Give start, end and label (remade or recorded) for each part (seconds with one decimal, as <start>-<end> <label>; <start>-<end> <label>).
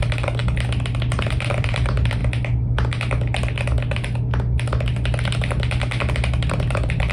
0.0-0.4 remade; 0.4-1.2 recorded; 1.2-2.2 remade; 2.2-6.5 recorded; 6.5-7.1 remade